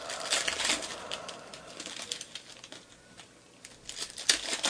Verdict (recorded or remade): recorded